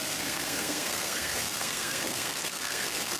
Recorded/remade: remade